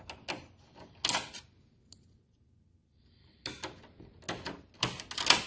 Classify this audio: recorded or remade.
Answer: recorded